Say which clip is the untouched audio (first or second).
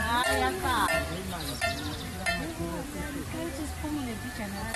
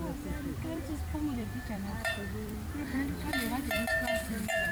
first